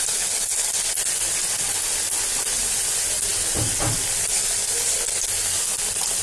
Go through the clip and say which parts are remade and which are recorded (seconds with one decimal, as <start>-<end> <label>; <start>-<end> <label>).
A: 0.0-6.2 recorded

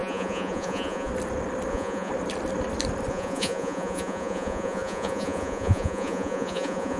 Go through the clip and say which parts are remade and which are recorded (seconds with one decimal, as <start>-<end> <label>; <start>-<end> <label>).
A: 0.0-1.1 remade; 1.1-1.7 recorded; 1.7-2.1 remade; 2.1-3.1 recorded; 3.1-7.0 remade

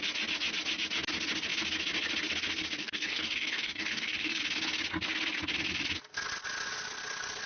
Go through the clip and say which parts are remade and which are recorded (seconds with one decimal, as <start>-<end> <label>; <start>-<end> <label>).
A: 0.0-2.8 recorded; 2.8-4.4 remade; 4.4-7.5 recorded

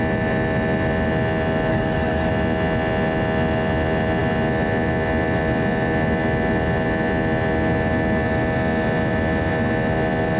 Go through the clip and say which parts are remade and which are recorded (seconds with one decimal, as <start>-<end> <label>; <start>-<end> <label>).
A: 0.0-1.7 recorded; 1.7-2.3 remade; 2.3-10.4 recorded

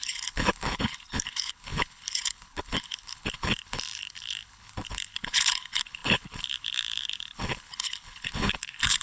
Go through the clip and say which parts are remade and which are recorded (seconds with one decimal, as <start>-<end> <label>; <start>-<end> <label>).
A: 0.0-9.0 remade